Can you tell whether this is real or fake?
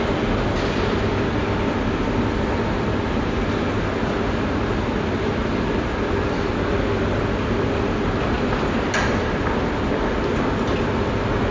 real